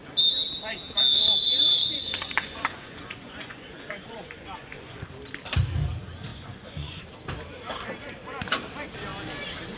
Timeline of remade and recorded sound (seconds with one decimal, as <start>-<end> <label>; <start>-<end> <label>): 0.0-1.8 recorded; 1.8-5.0 remade; 5.0-6.3 recorded; 6.3-7.0 remade; 7.0-9.8 recorded